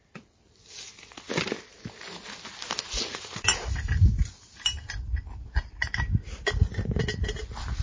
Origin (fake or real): real